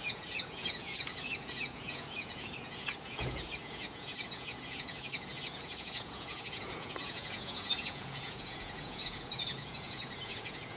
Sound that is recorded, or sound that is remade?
remade